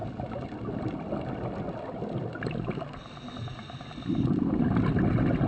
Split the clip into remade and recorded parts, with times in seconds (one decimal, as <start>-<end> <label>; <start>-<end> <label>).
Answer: 0.0-5.5 recorded